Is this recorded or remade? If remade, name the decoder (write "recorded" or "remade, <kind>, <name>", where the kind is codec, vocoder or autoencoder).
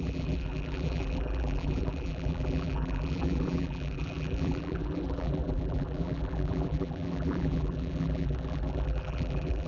remade, vocoder, BigVGAN v2